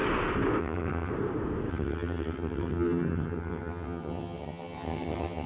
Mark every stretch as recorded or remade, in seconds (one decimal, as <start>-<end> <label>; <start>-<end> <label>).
0.0-0.6 recorded; 0.6-1.1 remade; 1.1-1.7 recorded; 1.7-5.5 remade